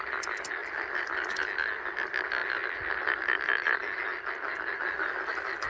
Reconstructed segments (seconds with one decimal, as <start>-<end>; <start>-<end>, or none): none